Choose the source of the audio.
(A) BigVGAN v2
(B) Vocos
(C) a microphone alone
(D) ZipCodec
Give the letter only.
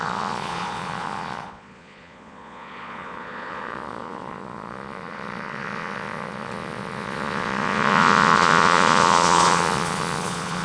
B